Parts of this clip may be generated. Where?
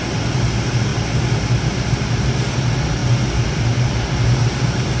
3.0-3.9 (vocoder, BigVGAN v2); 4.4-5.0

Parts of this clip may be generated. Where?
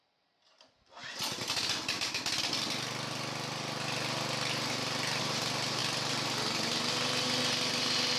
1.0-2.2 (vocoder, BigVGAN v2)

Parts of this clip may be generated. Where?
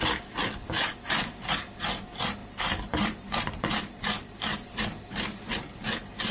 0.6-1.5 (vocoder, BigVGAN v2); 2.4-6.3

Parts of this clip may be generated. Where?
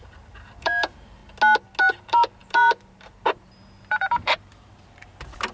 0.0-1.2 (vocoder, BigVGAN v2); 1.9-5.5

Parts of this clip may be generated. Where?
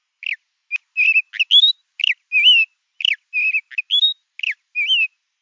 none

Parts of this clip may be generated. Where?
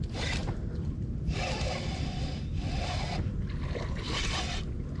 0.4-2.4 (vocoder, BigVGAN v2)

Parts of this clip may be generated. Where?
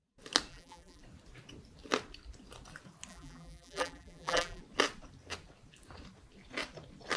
0.5-1.0 (vocoder, BigVGAN v2); 3.1-4.6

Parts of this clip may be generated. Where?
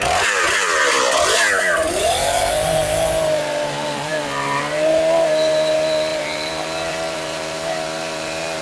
0.0-0.8 (vocoder, BigVGAN v2); 1.9-8.6